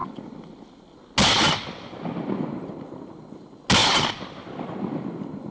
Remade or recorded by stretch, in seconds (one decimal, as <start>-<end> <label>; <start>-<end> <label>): 0.0-5.5 recorded